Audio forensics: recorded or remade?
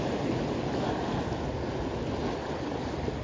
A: recorded